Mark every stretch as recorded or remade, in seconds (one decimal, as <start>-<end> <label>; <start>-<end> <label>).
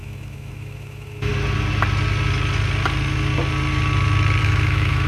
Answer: 0.0-1.3 remade; 1.3-4.4 recorded; 4.4-5.1 remade